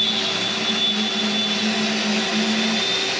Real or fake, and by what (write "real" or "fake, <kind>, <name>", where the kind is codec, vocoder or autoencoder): real